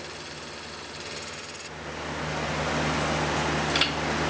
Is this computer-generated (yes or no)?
no